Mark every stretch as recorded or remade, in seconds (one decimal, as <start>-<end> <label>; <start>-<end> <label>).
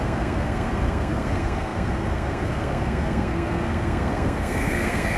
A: 0.0-5.2 remade